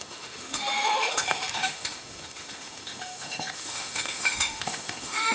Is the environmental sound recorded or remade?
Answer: remade